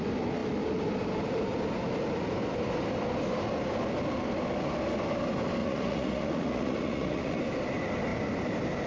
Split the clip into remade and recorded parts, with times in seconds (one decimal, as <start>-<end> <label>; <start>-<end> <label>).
0.0-5.6 recorded; 5.6-7.4 remade; 7.4-8.9 recorded

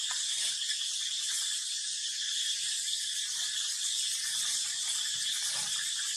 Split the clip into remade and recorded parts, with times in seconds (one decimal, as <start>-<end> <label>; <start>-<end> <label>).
0.0-1.4 recorded; 1.4-3.5 remade; 3.5-6.2 recorded